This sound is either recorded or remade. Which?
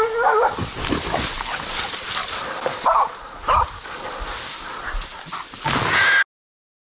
recorded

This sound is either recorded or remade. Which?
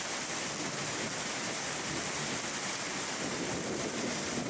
recorded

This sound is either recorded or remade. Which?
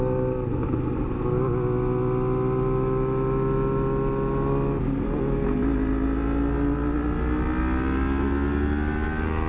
recorded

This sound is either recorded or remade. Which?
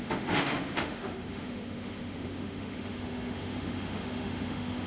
remade